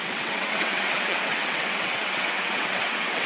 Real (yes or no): no